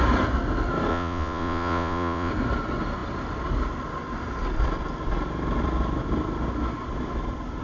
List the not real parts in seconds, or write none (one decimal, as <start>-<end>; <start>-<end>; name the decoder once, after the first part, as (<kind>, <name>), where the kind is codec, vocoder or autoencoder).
0.9-2.3 (vocoder, Vocos)